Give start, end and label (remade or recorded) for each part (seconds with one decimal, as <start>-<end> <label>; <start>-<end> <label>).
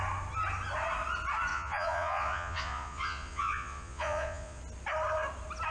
0.0-1.5 recorded; 1.5-4.6 remade; 4.6-5.7 recorded